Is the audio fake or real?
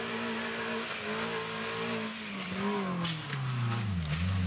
real